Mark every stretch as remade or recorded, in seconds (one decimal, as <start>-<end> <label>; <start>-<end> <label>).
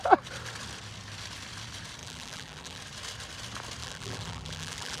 0.0-2.0 recorded; 2.0-2.8 remade; 2.8-3.8 recorded; 3.8-5.0 remade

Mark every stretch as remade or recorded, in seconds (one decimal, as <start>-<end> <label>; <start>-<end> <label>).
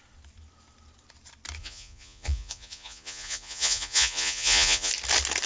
0.0-1.6 recorded; 1.6-4.9 remade; 4.9-5.5 recorded